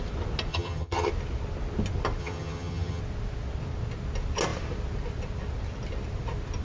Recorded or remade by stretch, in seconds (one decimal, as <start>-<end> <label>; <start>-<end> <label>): 0.0-0.5 recorded; 0.5-1.1 remade; 1.1-2.2 recorded; 2.2-3.0 remade; 3.0-6.6 recorded

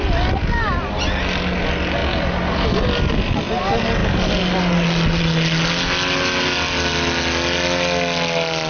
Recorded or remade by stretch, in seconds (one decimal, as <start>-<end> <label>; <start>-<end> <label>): 0.0-8.7 recorded